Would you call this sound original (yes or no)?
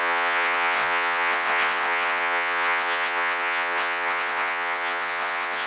no